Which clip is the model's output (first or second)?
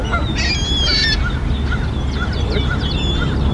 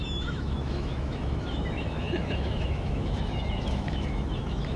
second